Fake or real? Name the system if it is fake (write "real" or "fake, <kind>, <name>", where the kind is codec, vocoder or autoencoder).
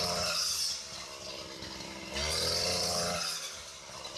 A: real